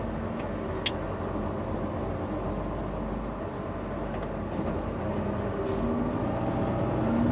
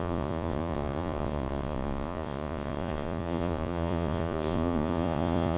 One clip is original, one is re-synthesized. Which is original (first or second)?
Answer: first